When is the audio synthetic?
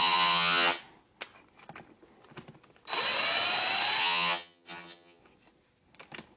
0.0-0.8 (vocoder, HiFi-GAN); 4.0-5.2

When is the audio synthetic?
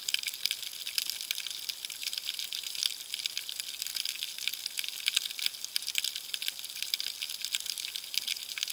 2.0-2.8 (vocoder, BigVGAN v2)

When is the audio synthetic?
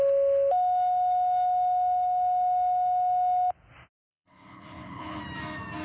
4.1-5.2 (codec, HILCodec)